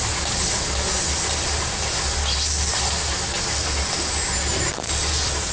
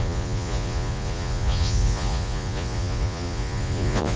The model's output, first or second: second